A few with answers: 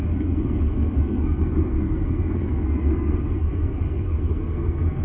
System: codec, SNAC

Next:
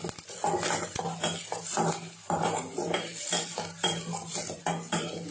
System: none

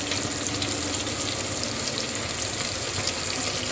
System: none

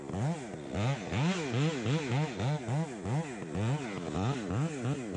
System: none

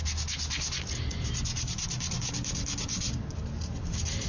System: none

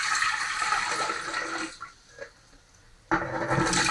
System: none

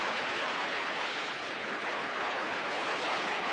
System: codec, HILCodec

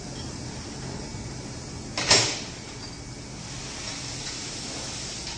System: none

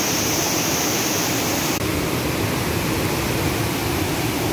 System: vocoder, BigVGAN v2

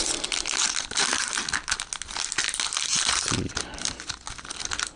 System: none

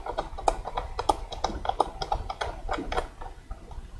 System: none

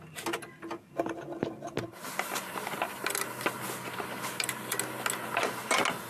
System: none